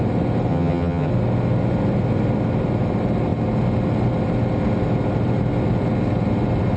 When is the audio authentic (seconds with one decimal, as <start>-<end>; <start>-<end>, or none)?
0.0-0.5; 1.1-6.8